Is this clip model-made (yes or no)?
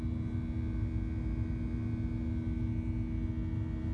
no